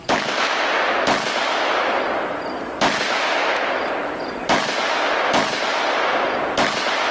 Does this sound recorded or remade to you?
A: recorded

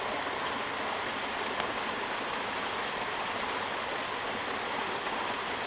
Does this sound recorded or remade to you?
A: recorded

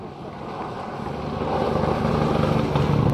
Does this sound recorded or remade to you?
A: recorded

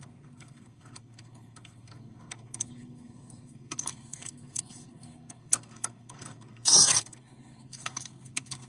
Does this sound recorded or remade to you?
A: remade